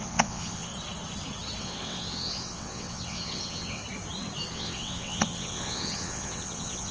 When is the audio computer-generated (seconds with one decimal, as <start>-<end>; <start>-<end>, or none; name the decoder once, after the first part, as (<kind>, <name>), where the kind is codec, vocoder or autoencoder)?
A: 0.0-0.7 (vocoder, WaveNeXt); 1.6-3.8; 4.5-6.9